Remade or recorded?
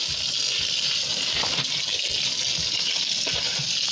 recorded